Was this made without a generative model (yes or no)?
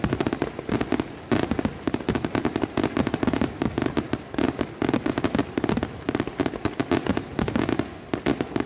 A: yes